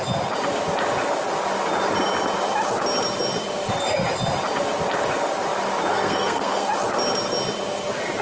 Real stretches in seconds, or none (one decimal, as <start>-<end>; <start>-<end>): 0.0-5.9; 6.7-8.2